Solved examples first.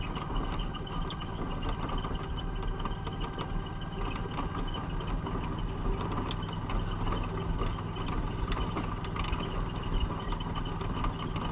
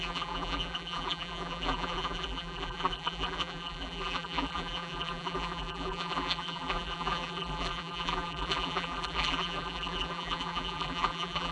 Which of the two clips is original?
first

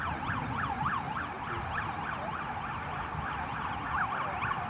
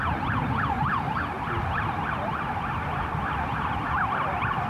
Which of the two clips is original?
first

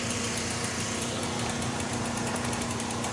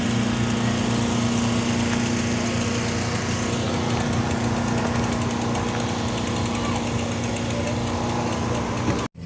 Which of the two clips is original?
second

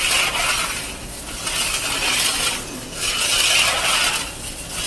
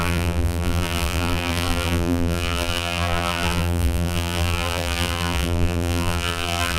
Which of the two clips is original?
first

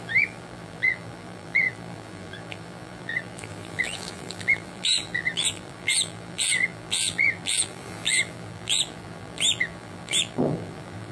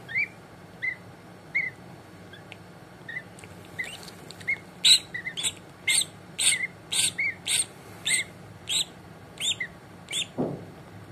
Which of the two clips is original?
second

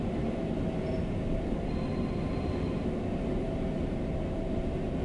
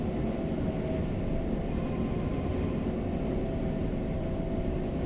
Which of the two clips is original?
second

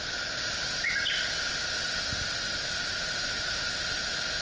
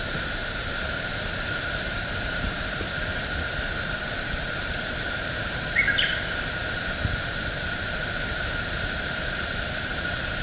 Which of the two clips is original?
first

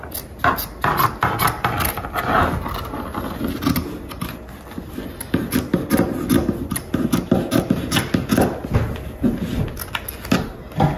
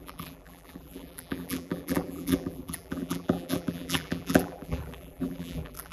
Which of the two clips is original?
first